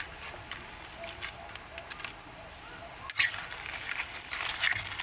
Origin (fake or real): real